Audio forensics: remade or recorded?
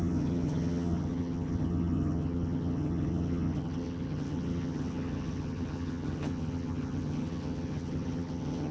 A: remade